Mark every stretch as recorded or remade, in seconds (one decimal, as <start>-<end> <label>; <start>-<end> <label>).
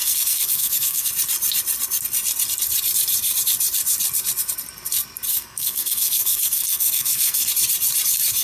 0.0-1.1 remade; 1.1-5.3 recorded; 5.3-7.5 remade; 7.5-8.4 recorded